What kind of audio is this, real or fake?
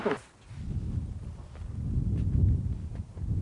real